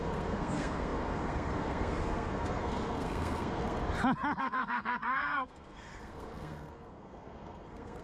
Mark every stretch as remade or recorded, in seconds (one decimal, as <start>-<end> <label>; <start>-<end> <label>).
0.0-3.8 remade; 3.8-4.4 recorded; 4.4-8.0 remade